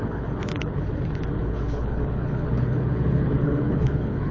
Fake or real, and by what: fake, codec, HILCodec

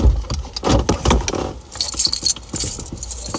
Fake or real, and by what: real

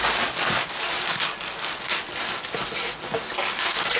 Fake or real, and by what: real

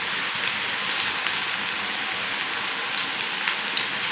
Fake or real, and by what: real